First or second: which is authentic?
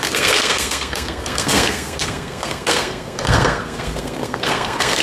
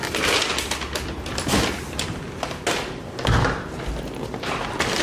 second